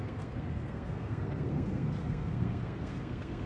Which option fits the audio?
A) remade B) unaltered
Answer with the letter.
A